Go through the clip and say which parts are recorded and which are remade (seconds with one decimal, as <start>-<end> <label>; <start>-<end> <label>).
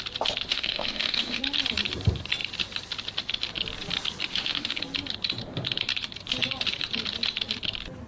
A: 0.0-0.5 recorded; 0.5-1.4 remade; 1.4-4.3 recorded; 4.3-4.8 remade; 4.8-8.1 recorded